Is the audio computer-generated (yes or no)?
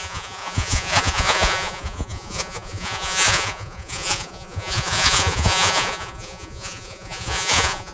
yes